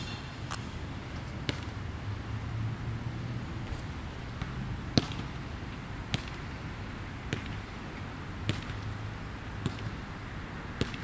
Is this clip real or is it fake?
real